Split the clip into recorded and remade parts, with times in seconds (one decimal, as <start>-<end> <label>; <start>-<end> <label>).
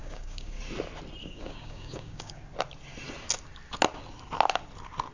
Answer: 0.0-0.6 remade; 0.6-1.2 recorded; 1.2-2.4 remade; 2.4-5.1 recorded